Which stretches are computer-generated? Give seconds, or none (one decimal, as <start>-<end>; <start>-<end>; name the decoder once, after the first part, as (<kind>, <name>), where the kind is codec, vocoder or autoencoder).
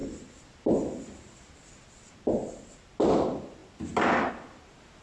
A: none